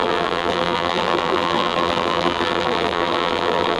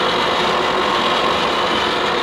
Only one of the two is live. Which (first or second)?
second